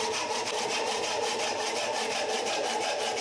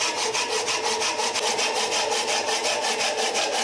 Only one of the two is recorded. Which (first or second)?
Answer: second